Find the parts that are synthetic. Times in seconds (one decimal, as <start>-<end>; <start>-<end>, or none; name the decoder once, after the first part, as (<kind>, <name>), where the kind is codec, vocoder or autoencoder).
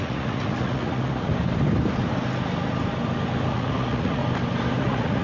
0.0-1.3 (vocoder, Vocos); 3.5-4.2; 4.8-5.2